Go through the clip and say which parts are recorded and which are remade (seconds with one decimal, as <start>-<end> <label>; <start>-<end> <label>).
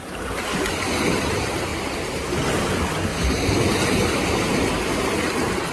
0.0-5.7 recorded